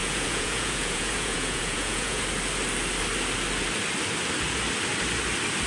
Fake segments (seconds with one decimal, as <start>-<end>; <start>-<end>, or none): 0.0-2.2